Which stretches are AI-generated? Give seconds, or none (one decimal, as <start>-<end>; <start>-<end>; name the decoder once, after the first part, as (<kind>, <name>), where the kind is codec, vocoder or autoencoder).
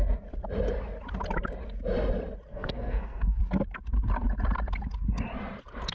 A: 2.5-3.4 (codec, SNAC)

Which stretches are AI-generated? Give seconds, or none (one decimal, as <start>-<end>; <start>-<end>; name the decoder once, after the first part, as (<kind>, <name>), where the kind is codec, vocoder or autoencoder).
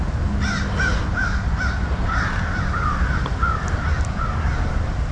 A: none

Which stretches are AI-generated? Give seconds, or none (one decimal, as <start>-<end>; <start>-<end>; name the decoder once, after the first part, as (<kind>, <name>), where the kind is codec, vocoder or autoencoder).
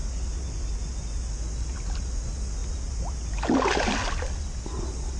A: none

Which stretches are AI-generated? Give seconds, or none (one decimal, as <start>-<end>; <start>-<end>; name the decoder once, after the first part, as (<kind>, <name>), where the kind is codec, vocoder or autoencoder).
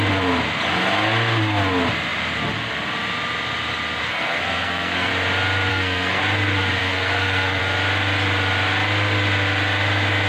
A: 4.0-5.1 (codec, SNAC); 5.7-6.2; 6.8-7.6